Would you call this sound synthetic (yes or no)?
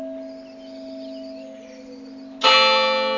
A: no